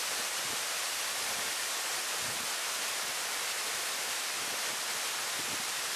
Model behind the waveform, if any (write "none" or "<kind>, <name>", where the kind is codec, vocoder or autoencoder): vocoder, BigVGAN v2